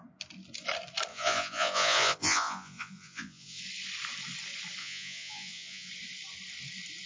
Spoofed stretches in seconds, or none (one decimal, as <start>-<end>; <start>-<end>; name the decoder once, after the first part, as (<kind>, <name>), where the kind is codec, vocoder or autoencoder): 1.1-3.6 (vocoder, Vocos); 4.8-5.9